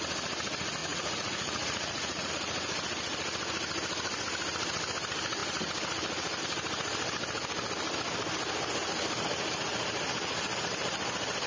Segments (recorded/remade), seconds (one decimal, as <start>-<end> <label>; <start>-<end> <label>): 0.0-0.8 recorded; 0.8-2.3 remade; 2.3-11.5 recorded